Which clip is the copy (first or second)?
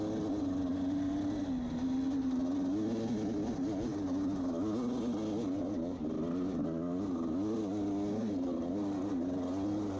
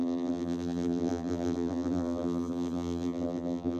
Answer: second